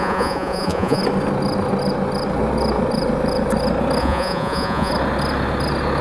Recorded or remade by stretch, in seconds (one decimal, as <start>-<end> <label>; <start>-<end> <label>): 0.0-1.0 remade; 1.0-4.0 recorded; 4.0-4.9 remade; 4.9-6.0 recorded